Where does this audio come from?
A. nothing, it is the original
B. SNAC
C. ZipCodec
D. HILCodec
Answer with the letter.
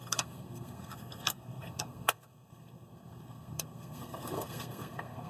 B